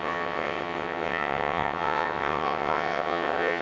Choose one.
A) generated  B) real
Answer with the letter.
A